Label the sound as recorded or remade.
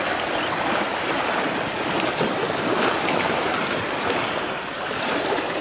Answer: recorded